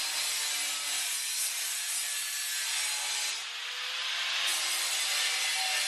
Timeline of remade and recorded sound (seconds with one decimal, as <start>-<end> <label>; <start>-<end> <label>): 0.0-5.9 recorded